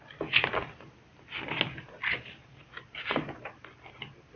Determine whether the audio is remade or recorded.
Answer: recorded